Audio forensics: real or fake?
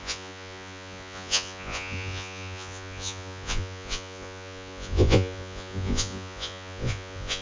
fake